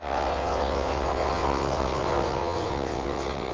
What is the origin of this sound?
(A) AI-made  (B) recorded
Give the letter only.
A